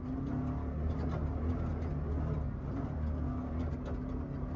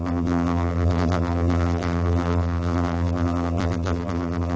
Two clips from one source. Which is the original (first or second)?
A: first